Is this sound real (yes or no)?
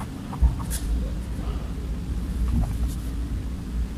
yes